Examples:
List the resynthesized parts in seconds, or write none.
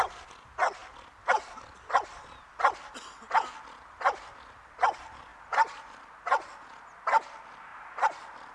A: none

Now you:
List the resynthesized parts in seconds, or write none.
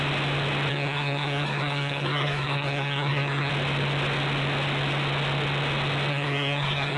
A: 0.7-3.5 (codec, SNAC); 6.1-7.0